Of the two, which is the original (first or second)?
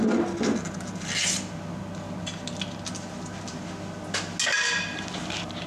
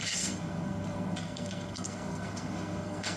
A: first